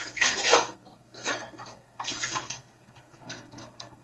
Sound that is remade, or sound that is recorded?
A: remade